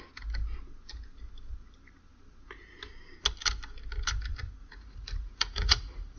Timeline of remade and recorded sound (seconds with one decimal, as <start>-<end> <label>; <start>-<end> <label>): 0.0-4.6 recorded; 4.6-6.2 remade